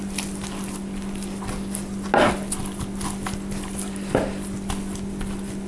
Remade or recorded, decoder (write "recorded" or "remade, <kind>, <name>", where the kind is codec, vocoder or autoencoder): recorded